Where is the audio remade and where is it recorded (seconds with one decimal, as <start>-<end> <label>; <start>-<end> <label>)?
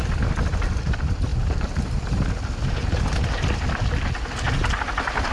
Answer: 0.0-5.3 recorded